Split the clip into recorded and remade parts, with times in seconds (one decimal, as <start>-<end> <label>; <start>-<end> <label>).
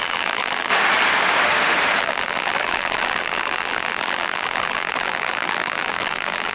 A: 0.0-0.7 remade; 0.7-2.0 recorded; 2.0-6.5 remade